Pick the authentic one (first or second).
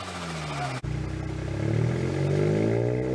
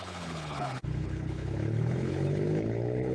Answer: first